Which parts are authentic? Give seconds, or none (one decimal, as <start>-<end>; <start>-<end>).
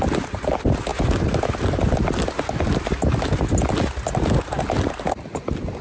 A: 0.0-5.8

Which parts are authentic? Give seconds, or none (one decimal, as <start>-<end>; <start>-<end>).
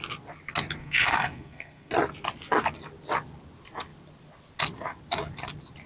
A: 0.0-0.8; 1.9-5.9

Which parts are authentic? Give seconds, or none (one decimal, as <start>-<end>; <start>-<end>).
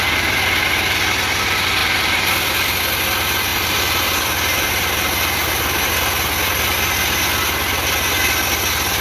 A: 0.0-1.8; 2.8-3.5; 5.9-9.0